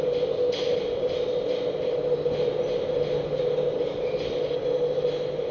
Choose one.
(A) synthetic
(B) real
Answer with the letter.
B